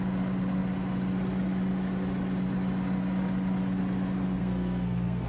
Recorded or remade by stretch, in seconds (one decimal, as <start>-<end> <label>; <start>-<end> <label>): 0.0-4.4 recorded; 4.4-5.3 remade